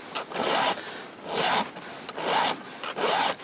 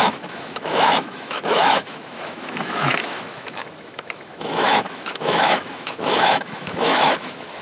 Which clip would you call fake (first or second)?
second